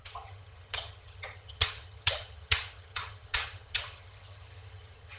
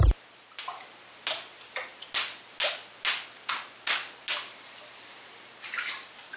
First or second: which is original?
second